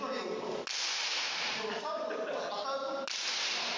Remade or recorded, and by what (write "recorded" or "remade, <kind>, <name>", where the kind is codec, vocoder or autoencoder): recorded